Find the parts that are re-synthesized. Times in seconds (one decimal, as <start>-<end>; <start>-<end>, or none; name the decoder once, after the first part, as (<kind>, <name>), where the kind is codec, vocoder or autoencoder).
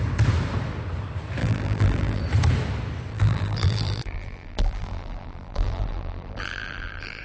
1.4-2.2 (vocoder, BigVGAN v2); 3.1-7.2